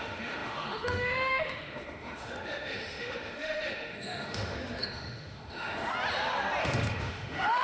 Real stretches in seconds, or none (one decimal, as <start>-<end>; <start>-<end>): 5.9-6.6